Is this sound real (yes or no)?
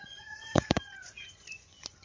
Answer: no